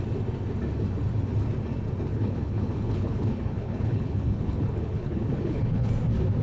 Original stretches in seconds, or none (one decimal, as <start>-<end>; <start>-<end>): 0.0-2.1; 5.9-6.4